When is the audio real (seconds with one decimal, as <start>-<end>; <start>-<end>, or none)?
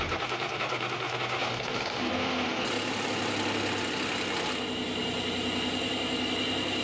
0.0-6.8